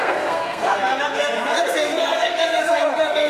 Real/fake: fake